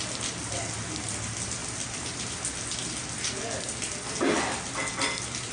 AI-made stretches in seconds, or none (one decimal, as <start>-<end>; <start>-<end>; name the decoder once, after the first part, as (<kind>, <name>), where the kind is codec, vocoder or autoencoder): none